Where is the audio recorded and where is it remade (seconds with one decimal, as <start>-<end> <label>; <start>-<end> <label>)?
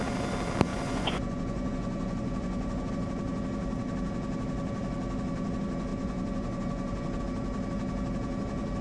0.0-0.7 recorded; 0.7-2.9 remade; 2.9-5.9 recorded; 5.9-7.2 remade; 7.2-8.8 recorded